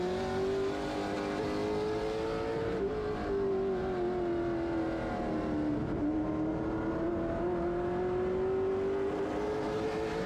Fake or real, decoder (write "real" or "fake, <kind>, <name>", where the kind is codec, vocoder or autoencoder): real